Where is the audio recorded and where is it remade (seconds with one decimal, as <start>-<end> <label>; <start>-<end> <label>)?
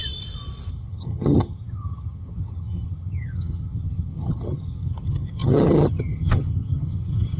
0.0-0.7 recorded; 0.7-7.4 remade